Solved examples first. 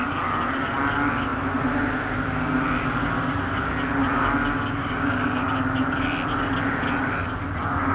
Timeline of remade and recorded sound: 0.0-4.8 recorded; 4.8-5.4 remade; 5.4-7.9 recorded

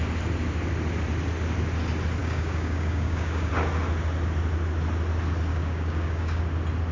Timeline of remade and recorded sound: 0.0-2.2 recorded; 2.2-3.5 remade; 3.5-5.5 recorded; 5.5-6.4 remade; 6.4-6.9 recorded